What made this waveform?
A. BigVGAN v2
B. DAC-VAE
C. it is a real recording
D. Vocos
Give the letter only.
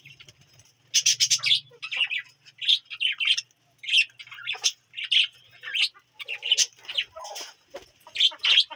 C